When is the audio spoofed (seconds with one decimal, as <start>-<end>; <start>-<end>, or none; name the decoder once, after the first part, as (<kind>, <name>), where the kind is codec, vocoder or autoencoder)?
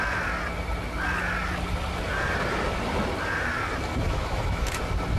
3.9-4.8 (autoencoder, DAC-VAE)